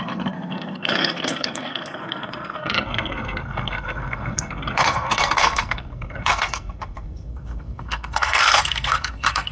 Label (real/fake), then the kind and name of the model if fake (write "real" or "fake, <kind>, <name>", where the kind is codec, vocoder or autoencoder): fake, codec, SNAC